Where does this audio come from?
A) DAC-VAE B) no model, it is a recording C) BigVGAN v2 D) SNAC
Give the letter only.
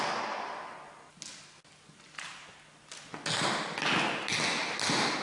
B